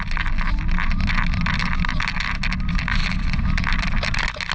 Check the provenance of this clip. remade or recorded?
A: recorded